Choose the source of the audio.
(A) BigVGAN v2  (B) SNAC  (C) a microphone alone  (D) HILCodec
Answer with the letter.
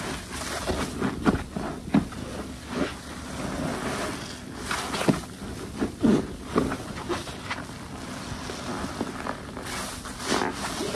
C